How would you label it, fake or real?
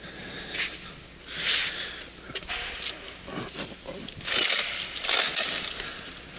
real